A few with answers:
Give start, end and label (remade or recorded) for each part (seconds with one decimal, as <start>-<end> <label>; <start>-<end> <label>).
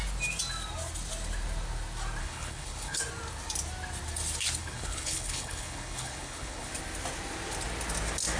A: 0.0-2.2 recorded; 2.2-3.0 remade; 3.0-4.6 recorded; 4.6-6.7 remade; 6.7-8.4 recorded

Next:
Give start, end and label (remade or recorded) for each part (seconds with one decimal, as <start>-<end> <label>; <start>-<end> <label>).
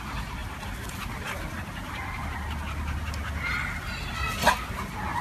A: 0.0-5.2 recorded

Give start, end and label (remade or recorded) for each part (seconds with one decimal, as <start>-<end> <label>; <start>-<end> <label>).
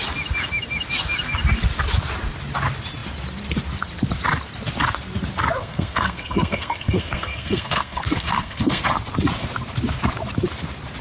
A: 0.0-5.6 recorded; 5.6-8.8 remade; 8.8-11.0 recorded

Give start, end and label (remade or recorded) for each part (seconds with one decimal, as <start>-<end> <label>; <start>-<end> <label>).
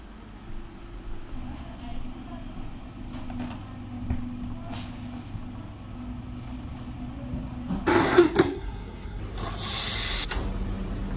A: 0.0-8.0 recorded; 8.0-9.2 remade; 9.2-11.2 recorded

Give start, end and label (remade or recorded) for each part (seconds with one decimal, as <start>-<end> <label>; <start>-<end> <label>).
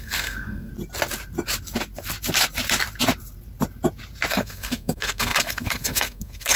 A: 0.0-0.7 remade; 0.7-4.3 recorded; 4.3-6.6 remade